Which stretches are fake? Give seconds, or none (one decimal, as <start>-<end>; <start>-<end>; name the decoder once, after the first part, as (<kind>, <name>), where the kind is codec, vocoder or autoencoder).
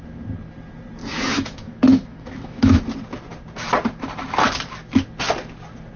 1.0-2.8 (autoencoder, DAC-VAE)